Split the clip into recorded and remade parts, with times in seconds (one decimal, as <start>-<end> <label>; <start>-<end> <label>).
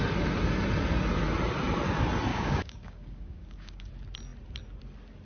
0.0-2.3 recorded; 2.3-3.9 remade; 3.9-5.2 recorded